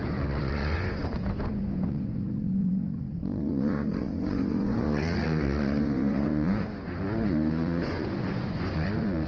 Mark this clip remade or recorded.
remade